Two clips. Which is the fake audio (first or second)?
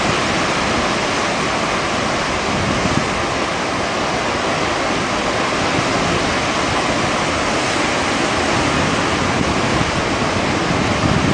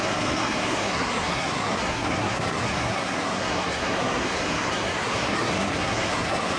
second